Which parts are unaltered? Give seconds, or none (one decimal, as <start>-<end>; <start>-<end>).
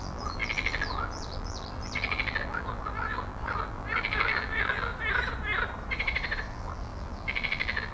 4.9-6.5